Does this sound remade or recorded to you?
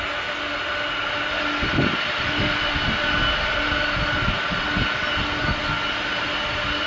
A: recorded